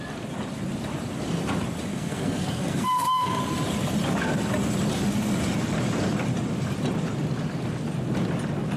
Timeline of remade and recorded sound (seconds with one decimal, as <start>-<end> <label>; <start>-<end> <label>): 0.0-1.9 recorded; 1.9-3.4 remade; 3.4-8.8 recorded